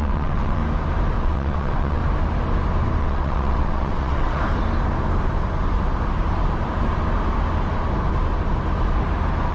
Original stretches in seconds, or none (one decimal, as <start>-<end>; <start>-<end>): 0.6-1.2; 2.0-3.0; 4.4-9.5